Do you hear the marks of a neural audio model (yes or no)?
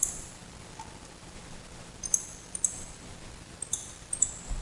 yes